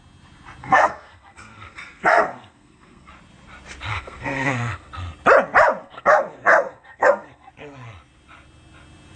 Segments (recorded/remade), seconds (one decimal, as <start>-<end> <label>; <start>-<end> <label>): 0.0-0.6 recorded; 0.6-3.1 remade; 3.1-3.9 recorded; 3.9-4.9 remade; 4.9-5.8 recorded; 5.8-7.5 remade; 7.5-9.2 recorded